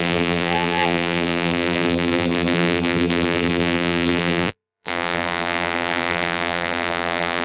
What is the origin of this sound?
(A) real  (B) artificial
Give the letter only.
B